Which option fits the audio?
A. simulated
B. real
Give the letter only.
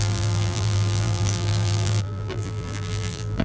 A